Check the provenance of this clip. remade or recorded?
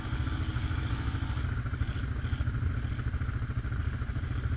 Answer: recorded